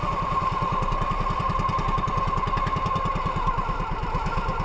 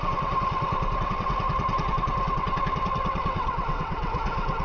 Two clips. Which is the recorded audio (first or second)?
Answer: first